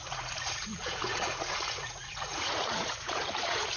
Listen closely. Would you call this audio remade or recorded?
remade